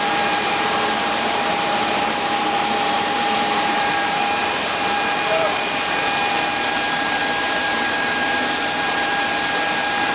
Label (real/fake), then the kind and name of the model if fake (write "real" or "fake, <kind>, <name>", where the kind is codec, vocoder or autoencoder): fake, vocoder, BigVGAN v2